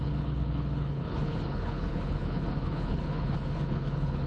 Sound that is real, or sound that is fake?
fake